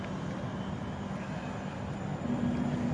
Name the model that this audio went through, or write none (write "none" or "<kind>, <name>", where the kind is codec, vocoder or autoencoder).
none